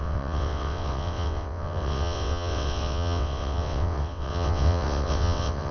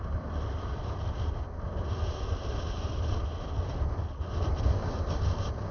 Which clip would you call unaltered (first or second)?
second